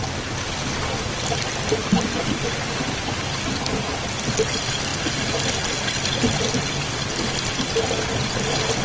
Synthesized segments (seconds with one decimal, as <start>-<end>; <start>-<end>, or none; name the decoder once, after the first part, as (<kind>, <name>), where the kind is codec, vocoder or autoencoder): none